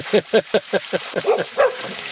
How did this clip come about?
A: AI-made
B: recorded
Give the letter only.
A